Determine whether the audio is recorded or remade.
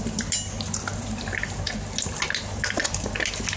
recorded